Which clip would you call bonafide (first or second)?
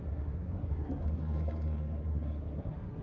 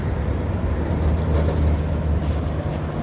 second